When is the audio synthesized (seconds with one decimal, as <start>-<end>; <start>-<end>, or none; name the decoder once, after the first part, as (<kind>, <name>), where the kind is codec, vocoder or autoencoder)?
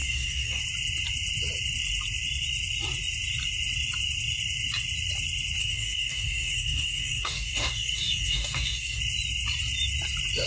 0.0-0.6 (codec, DAC); 5.6-9.0